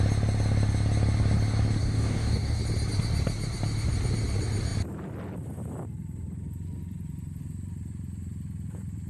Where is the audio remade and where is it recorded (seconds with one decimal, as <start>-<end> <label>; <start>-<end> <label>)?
0.0-1.8 recorded; 1.8-2.6 remade; 2.6-9.1 recorded